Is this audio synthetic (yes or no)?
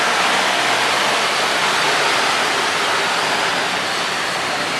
no